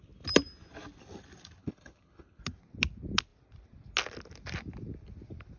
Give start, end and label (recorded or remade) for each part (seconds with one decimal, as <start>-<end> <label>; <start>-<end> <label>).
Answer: 0.0-1.6 recorded; 1.6-2.4 remade; 2.4-5.6 recorded